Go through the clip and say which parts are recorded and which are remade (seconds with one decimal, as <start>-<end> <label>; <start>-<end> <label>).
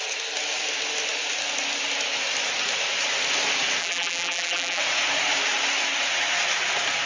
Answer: 0.0-3.8 recorded; 3.8-4.8 remade; 4.8-7.0 recorded